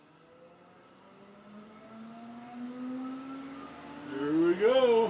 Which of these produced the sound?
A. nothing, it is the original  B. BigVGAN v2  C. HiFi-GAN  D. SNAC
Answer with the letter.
A